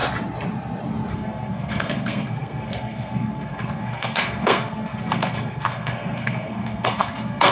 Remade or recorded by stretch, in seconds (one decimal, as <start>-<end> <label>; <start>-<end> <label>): 0.0-1.1 recorded; 1.1-7.5 remade